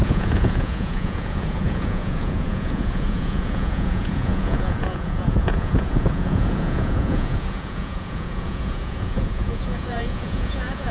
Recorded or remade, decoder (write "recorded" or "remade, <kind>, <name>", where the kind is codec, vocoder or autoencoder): remade, vocoder, Vocos